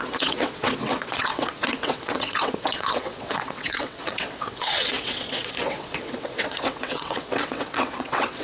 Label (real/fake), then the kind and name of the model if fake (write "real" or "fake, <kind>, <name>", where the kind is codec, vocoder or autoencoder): fake, vocoder, WaveNeXt